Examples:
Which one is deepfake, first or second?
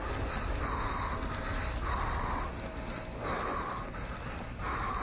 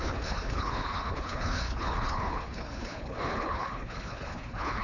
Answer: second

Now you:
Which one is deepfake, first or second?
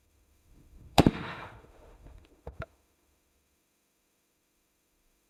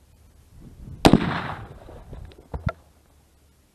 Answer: first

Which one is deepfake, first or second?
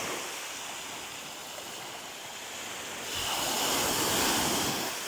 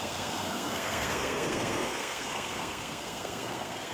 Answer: second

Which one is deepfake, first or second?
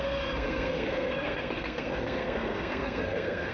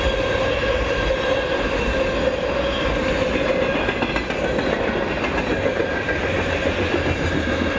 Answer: first